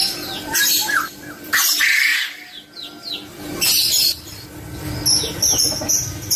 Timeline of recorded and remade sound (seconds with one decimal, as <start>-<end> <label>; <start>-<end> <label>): 0.0-0.5 recorded; 0.5-1.5 remade; 1.5-6.4 recorded

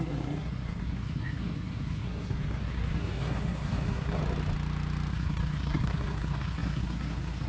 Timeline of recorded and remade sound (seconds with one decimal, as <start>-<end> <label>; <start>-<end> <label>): 0.0-4.2 remade; 4.2-5.1 recorded; 5.1-7.5 remade

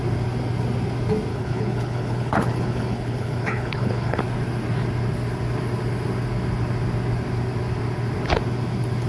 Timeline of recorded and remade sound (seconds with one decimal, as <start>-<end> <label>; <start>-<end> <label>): 0.0-1.3 recorded; 1.3-4.2 remade; 4.2-9.1 recorded

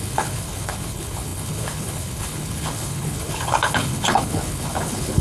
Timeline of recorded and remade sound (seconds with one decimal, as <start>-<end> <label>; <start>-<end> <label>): 0.0-5.2 remade

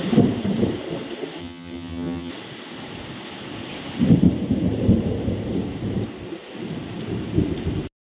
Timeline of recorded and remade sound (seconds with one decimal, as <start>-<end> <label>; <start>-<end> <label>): 0.0-1.4 recorded; 1.4-2.3 remade; 2.3-8.0 recorded